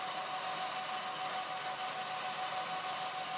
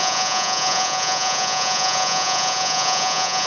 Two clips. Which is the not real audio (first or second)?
second